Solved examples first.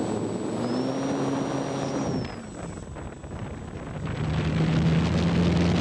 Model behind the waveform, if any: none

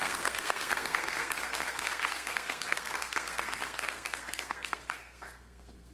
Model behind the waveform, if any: codec, SNAC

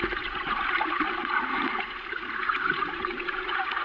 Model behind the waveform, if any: vocoder, Vocos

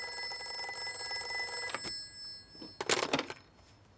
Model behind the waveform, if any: none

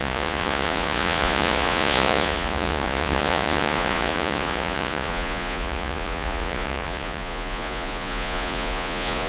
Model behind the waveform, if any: vocoder, Vocos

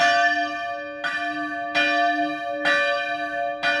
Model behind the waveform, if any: none